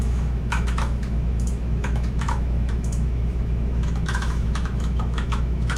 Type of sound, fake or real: fake